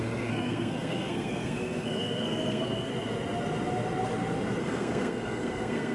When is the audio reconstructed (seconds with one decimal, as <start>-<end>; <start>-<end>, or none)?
0.0-2.9; 4.6-5.9